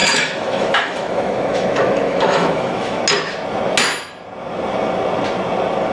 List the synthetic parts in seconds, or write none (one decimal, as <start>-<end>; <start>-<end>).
0.0-3.0

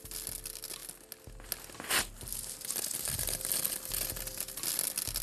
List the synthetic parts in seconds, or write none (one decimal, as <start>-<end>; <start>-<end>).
none